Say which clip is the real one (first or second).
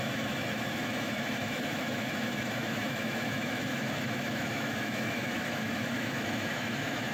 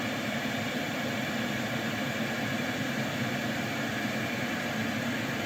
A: second